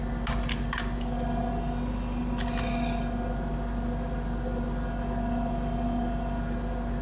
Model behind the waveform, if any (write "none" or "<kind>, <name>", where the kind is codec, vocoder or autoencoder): none